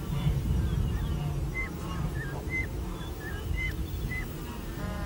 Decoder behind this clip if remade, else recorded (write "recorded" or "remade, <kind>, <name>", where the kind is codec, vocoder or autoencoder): remade, vocoder, BigVGAN v2